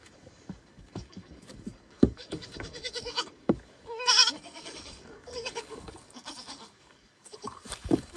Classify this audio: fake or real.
fake